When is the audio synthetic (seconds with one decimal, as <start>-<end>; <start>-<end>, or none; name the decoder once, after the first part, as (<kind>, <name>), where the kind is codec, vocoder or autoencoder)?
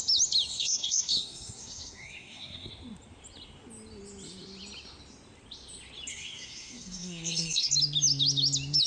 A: 0.5-2.7 (codec, SNAC); 6.1-7.7